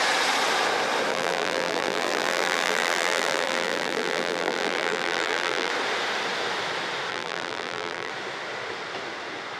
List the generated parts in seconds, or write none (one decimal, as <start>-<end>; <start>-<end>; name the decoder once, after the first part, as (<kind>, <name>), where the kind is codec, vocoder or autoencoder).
1.1-5.7 (vocoder, BigVGAN v2); 7.1-8.1